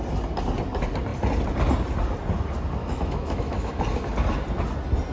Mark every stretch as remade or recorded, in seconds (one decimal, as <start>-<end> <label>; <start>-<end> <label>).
0.0-2.8 recorded; 2.8-3.8 remade; 3.8-5.1 recorded